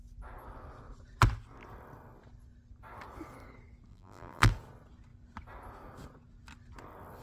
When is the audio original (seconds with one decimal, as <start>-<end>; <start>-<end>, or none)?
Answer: 0.0-3.9; 4.5-7.2